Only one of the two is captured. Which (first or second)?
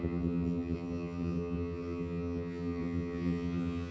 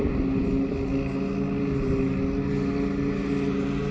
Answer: second